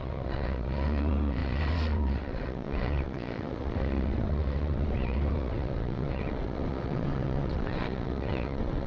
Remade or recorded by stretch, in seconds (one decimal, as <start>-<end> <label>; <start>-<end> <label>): 0.0-8.9 remade